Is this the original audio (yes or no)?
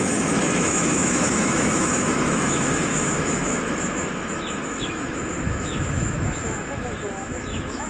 no